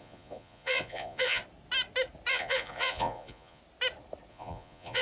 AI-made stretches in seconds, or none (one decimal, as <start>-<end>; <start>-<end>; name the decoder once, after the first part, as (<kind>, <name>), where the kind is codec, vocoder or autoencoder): 0.0-1.4 (vocoder, Vocos); 2.3-3.6; 4.3-5.0